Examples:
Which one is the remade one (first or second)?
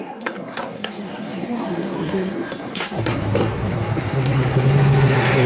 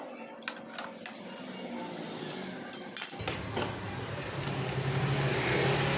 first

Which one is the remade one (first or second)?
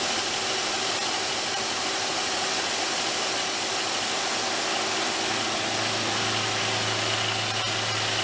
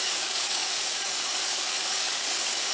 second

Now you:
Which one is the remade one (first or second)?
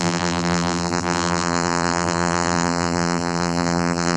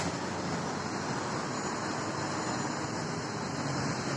first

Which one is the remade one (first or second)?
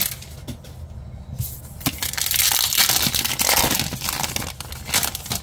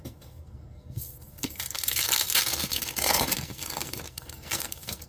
second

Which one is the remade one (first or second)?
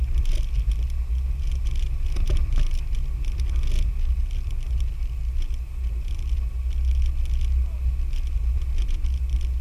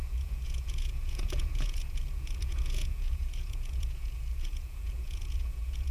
second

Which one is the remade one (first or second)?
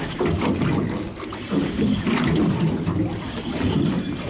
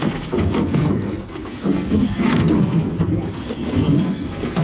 second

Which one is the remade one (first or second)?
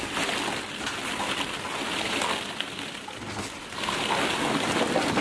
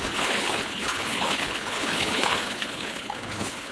second